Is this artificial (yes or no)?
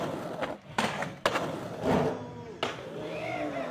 no